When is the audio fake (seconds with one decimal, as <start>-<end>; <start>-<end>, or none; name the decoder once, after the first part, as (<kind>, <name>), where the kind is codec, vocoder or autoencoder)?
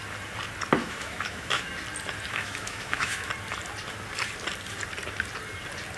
0.8-1.7 (autoencoder, DAC-VAE); 2.3-3.3